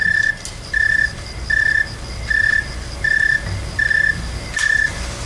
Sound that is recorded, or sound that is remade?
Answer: recorded